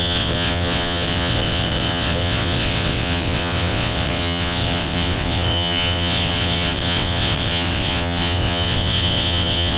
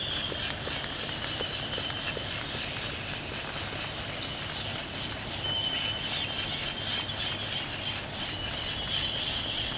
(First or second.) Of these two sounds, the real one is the second